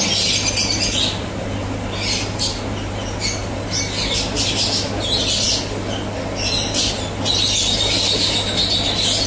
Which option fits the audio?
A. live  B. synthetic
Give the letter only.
A